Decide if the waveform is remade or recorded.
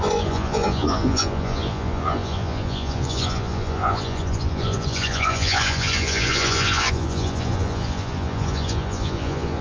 remade